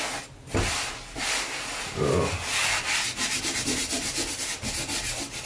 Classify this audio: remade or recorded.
recorded